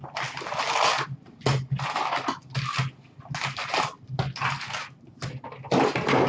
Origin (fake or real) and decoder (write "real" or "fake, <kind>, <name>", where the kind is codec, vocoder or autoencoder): real